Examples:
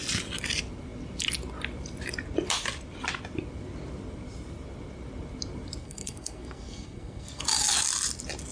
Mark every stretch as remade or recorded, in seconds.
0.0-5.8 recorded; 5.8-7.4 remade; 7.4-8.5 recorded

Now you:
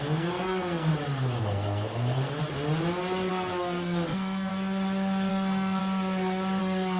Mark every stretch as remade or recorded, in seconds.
0.0-0.9 remade; 0.9-1.4 recorded; 1.4-2.4 remade; 2.4-3.3 recorded; 3.3-4.5 remade; 4.5-5.3 recorded; 5.3-5.8 remade; 5.8-6.6 recorded; 6.6-7.0 remade

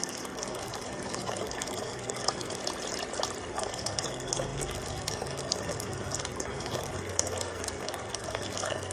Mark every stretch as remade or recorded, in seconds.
0.0-2.6 remade; 2.6-3.5 recorded; 3.5-8.9 remade

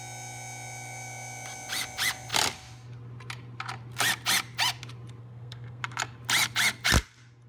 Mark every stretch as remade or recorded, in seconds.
0.0-5.2 recorded; 5.2-5.8 remade; 5.8-7.5 recorded

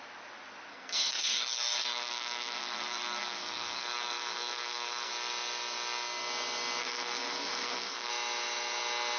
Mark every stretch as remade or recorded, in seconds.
0.0-0.7 recorded; 0.7-5.1 remade; 5.1-6.8 recorded; 6.8-8.1 remade; 8.1-9.2 recorded

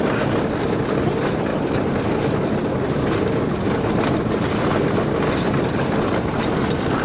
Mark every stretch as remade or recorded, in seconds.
0.0-7.0 recorded